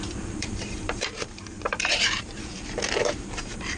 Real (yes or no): no